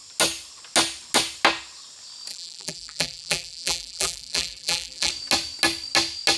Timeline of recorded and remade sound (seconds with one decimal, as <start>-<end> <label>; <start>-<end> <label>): 0.0-2.3 recorded; 2.3-5.1 remade; 5.1-6.4 recorded